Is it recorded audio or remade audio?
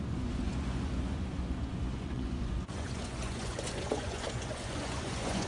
remade